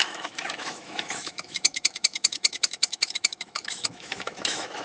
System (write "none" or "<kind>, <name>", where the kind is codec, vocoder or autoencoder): autoencoder, DAC-VAE